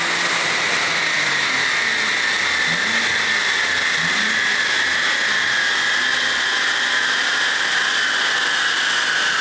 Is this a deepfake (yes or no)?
no